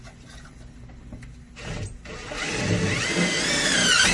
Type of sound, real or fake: real